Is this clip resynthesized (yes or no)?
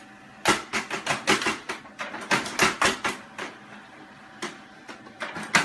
no